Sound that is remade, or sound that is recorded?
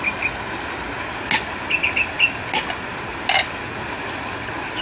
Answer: recorded